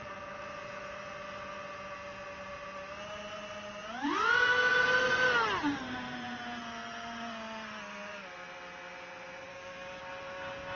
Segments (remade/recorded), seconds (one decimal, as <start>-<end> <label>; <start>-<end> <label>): 0.0-9.5 recorded; 9.5-10.0 remade; 10.0-10.8 recorded